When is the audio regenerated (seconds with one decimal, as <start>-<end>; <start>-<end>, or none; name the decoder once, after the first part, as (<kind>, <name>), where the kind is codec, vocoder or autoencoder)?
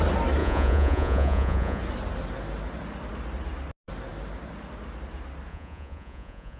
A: 0.4-1.8 (vocoder, Vocos); 5.5-6.6